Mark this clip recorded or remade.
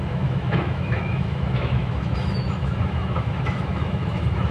remade